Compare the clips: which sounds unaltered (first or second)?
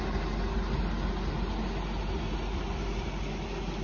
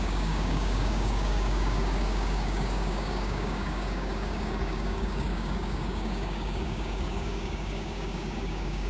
first